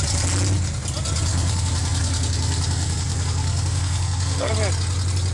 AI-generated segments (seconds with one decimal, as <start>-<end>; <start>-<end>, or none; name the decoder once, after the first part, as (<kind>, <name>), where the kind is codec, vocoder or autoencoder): 1.3-4.5 (codec, SNAC)

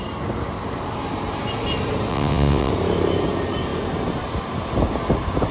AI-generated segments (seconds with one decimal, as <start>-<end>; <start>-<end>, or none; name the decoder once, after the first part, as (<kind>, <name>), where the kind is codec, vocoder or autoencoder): 2.1-2.7 (vocoder, WaveNeXt)